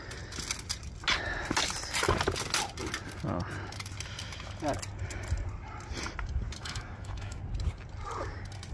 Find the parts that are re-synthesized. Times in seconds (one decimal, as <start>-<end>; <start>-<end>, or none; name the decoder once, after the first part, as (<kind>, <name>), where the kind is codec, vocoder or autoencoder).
6.6-7.4 (autoencoder, DAC-VAE)

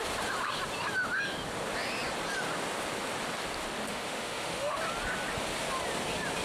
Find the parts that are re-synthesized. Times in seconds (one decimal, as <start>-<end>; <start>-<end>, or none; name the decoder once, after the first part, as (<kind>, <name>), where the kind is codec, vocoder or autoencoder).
3.9-4.8 (autoencoder, DAC-VAE)

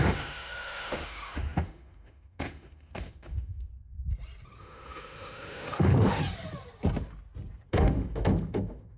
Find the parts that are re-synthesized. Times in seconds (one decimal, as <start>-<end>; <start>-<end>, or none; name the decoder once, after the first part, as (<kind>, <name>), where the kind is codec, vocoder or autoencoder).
0.0-3.7 (autoencoder, DAC-VAE); 4.6-6.2; 7.7-9.0

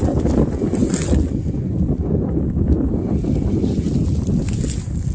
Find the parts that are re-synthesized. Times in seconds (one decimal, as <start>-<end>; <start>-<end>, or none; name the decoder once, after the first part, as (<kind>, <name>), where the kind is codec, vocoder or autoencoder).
none